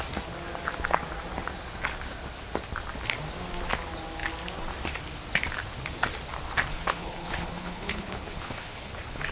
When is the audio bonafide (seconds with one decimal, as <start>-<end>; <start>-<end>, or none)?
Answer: 0.0-6.7; 8.9-9.3